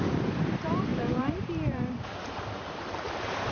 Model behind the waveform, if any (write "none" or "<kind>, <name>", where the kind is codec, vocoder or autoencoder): vocoder, BigVGAN v2